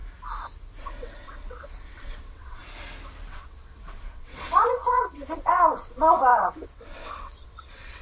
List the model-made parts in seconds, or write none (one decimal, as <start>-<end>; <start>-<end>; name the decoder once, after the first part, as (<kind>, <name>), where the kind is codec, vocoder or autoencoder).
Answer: 0.8-2.6 (vocoder, WaveNeXt); 3.3-8.0